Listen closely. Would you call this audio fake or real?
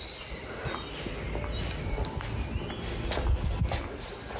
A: real